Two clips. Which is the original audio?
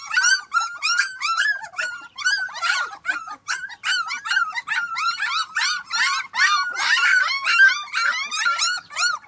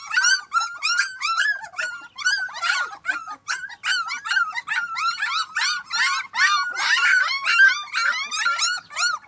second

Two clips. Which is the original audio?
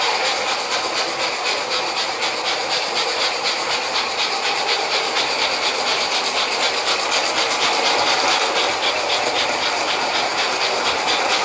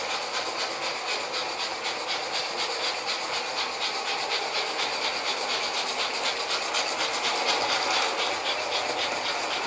second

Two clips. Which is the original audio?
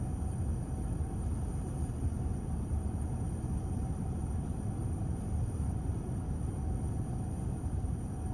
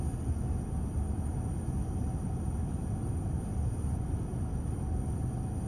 second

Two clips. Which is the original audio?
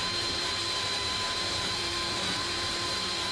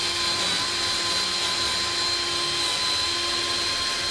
second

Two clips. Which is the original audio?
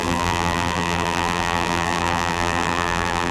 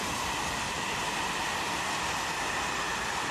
second